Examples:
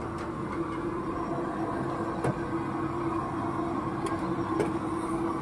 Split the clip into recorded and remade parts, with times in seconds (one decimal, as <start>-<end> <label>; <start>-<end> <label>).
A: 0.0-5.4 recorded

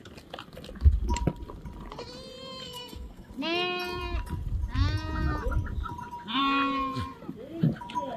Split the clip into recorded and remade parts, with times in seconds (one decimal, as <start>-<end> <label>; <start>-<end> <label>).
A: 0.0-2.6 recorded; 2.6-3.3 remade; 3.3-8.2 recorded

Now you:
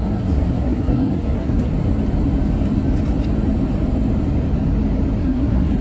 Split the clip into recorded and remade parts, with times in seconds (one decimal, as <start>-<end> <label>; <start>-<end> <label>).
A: 0.0-1.7 remade; 1.7-5.2 recorded; 5.2-5.8 remade

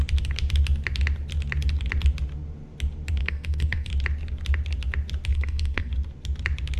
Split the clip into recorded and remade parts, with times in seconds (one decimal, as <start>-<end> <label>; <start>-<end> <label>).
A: 0.0-3.2 recorded; 3.2-3.9 remade; 3.9-5.3 recorded; 5.3-5.9 remade; 5.9-6.8 recorded

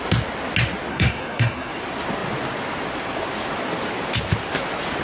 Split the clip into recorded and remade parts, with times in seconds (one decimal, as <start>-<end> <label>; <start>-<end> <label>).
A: 0.0-0.9 recorded; 0.9-1.7 remade; 1.7-5.0 recorded

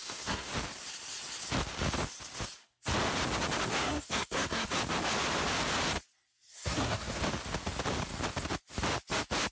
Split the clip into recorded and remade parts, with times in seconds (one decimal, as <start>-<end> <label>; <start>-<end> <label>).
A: 0.0-0.5 remade; 0.5-3.7 recorded; 3.7-4.8 remade; 4.8-6.5 recorded; 6.5-7.2 remade; 7.2-9.5 recorded

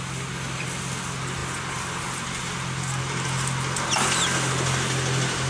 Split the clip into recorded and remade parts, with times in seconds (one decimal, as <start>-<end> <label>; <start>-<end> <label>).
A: 0.0-5.5 recorded